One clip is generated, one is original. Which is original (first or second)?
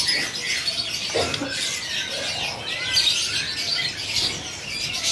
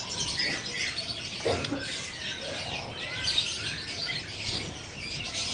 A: first